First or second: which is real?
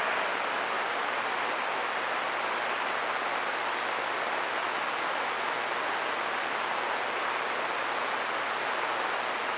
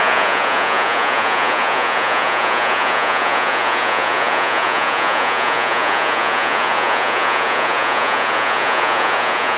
first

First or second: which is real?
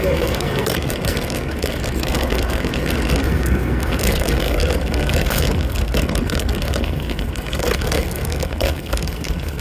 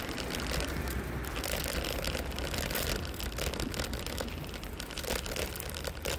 second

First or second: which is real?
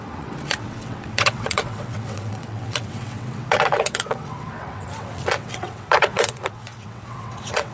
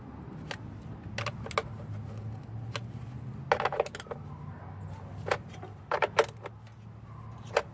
second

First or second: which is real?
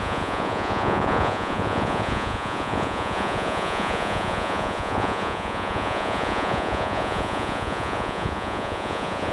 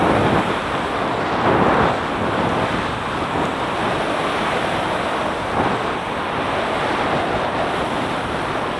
second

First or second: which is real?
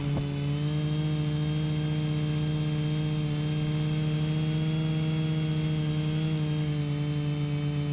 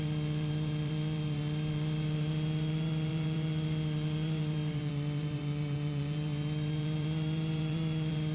first